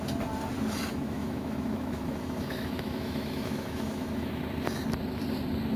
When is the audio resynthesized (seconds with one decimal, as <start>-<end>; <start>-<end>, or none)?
0.9-4.4